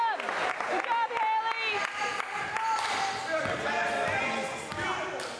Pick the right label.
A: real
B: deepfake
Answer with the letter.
A